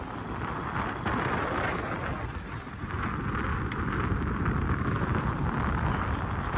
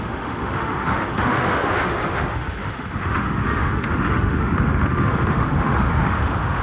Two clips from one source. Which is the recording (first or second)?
first